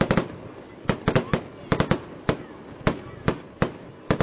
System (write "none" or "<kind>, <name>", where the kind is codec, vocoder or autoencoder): none